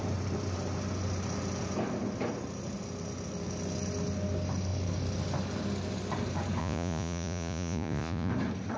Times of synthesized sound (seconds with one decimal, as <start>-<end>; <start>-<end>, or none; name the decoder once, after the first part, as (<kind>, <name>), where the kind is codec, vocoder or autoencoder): 6.6-8.3 (vocoder, Vocos)